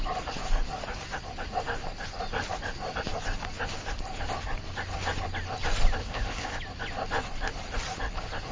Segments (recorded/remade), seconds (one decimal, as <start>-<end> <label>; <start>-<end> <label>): 0.0-6.0 recorded; 6.0-6.5 remade; 6.5-8.5 recorded